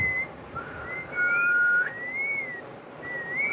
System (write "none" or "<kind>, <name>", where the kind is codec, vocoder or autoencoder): none